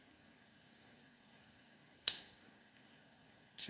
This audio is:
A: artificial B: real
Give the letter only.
A